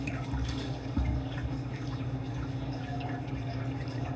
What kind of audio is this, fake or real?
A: fake